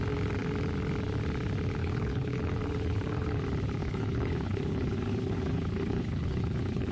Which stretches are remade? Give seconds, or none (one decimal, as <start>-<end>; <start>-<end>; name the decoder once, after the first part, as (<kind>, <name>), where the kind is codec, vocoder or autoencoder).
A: 1.8-3.4 (codec, HILCodec); 3.8-6.9